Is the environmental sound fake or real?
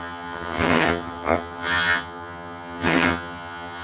fake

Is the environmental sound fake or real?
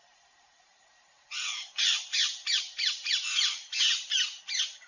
fake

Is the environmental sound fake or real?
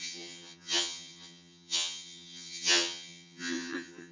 fake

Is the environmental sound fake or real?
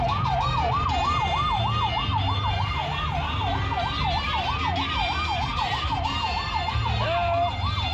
real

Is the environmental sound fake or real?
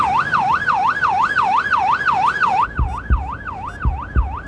real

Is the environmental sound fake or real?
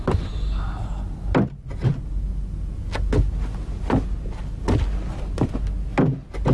real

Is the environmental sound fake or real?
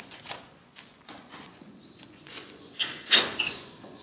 fake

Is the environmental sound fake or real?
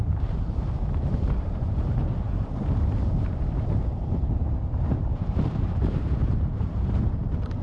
fake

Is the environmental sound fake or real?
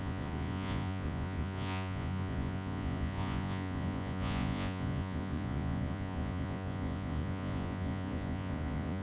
fake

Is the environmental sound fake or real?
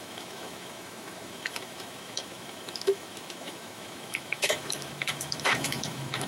fake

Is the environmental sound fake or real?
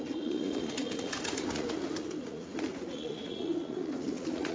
fake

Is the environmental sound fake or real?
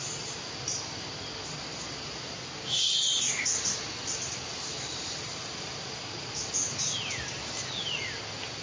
real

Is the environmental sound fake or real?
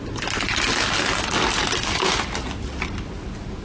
real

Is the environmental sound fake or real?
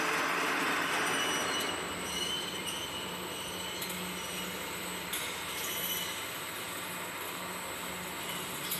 real